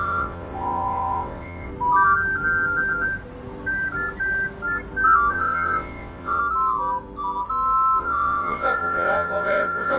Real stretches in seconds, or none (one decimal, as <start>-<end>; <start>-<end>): 1.7-5.3; 6.4-8.0